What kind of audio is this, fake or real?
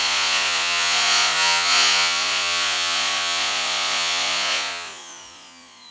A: fake